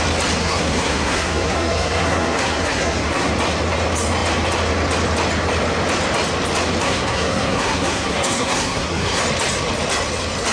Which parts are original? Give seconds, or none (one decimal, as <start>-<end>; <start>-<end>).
0.0-0.4; 3.3-6.8; 9.2-10.5